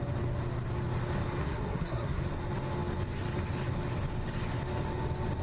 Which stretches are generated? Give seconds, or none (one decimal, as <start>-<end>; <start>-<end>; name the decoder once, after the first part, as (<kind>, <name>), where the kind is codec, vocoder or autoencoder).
1.4-2.2 (codec, SNAC)